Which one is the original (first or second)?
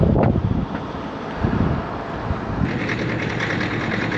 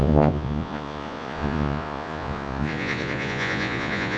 first